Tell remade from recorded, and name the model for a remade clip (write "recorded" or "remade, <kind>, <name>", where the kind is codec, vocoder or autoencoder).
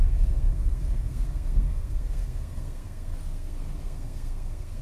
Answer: remade, codec, SNAC